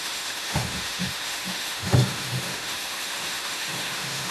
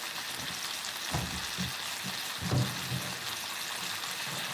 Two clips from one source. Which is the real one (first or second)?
second